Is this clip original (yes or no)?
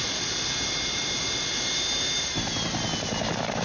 yes